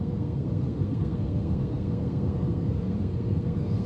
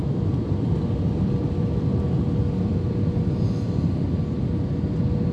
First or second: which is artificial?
first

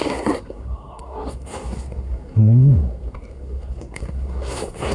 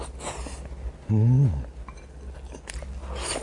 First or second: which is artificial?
first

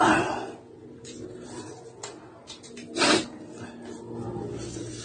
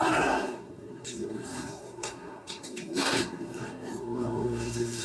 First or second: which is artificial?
second